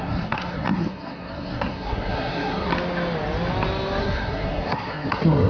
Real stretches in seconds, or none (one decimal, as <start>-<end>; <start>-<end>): 2.7-4.0